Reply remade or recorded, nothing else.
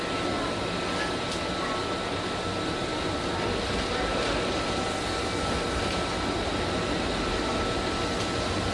recorded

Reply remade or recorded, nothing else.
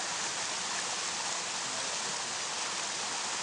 recorded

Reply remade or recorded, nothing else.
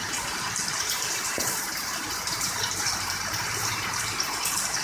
remade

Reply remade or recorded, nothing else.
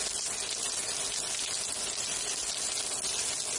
recorded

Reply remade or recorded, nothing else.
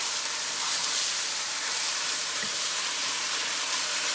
remade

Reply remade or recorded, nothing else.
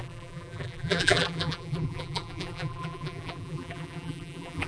remade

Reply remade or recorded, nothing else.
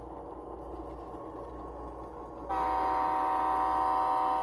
recorded